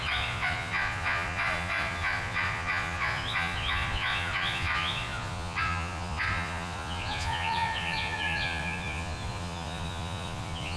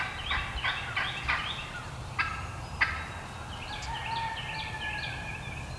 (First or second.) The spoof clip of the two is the first